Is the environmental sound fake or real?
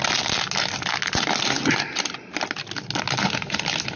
real